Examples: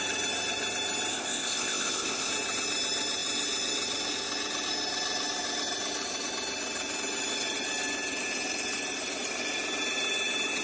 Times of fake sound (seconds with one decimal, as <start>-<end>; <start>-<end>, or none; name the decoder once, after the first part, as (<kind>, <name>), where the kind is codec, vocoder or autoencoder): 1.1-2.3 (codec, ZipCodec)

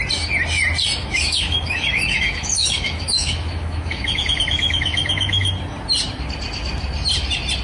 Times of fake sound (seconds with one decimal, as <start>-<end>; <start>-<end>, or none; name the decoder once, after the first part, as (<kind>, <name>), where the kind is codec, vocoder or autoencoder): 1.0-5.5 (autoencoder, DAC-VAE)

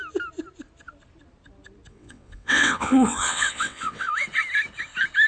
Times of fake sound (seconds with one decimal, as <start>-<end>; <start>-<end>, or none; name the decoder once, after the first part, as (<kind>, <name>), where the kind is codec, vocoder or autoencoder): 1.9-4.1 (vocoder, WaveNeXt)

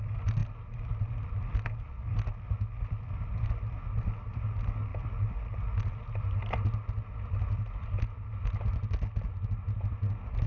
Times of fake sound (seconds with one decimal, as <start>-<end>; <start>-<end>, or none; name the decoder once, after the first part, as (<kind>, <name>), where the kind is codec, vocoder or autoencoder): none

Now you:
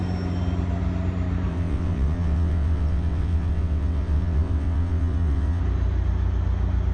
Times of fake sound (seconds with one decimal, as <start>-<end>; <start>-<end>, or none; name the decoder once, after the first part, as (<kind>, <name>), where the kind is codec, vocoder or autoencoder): 1.5-5.6 (vocoder, WaveNeXt)

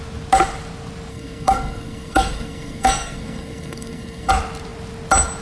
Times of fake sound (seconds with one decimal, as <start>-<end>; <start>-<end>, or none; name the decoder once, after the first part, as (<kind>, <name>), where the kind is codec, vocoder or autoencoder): 1.1-4.3 (codec, SNAC)

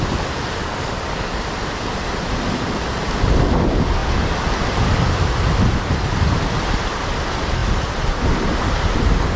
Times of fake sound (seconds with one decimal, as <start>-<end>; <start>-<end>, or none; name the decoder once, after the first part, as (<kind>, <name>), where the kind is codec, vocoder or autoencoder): 0.6-1.3 (codec, DAC)

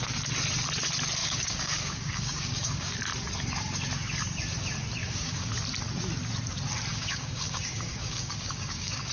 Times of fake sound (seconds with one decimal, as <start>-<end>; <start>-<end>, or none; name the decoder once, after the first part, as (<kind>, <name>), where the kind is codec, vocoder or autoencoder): 1.2-3.0 (codec, DAC); 5.0-5.5; 6.9-9.1